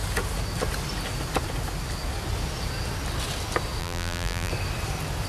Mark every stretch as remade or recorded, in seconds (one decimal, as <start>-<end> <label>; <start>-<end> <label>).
0.0-3.8 recorded; 3.8-4.5 remade; 4.5-5.3 recorded

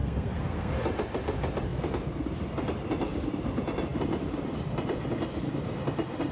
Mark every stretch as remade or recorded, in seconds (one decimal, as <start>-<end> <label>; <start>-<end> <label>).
0.0-0.7 remade; 0.7-6.3 recorded